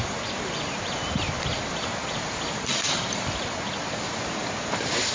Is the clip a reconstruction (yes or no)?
no